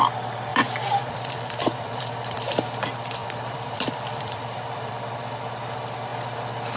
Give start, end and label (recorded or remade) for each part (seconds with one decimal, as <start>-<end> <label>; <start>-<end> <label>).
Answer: 0.0-0.5 recorded; 0.5-2.5 remade; 2.5-3.2 recorded; 3.2-4.9 remade; 4.9-6.8 recorded